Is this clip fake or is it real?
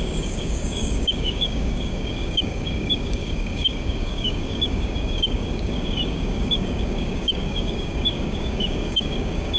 fake